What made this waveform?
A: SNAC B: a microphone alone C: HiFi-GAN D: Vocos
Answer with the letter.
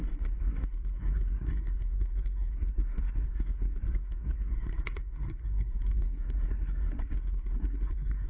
A